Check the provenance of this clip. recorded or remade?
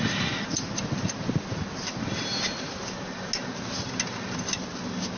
recorded